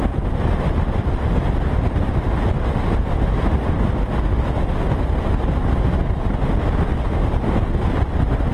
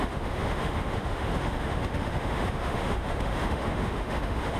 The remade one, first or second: second